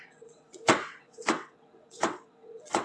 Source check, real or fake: fake